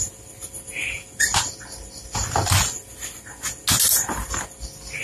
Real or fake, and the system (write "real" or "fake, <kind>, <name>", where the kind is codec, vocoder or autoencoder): real